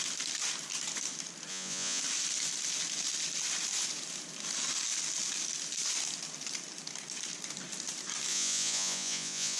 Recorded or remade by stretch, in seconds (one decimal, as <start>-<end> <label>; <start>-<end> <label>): 0.0-1.5 recorded; 1.5-2.0 remade; 2.0-8.3 recorded; 8.3-9.6 remade

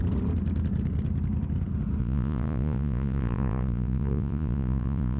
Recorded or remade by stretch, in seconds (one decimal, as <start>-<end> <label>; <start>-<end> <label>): 0.0-2.0 recorded; 2.0-5.2 remade

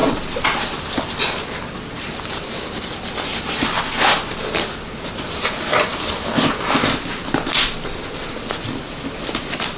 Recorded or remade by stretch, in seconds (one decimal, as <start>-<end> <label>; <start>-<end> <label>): 0.0-9.8 recorded

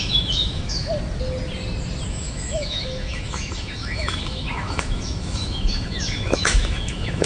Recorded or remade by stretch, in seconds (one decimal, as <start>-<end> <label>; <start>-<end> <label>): 0.0-0.9 remade; 0.9-2.1 recorded; 2.1-7.3 remade

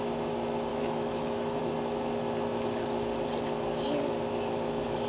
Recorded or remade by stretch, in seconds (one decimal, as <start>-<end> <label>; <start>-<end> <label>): 0.0-0.7 recorded; 0.7-1.6 remade; 1.6-5.1 recorded

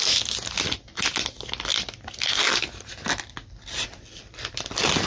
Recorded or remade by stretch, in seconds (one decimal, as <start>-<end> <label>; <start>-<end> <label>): 0.0-5.1 recorded